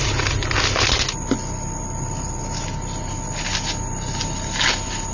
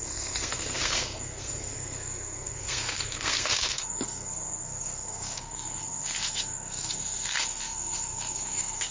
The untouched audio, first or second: first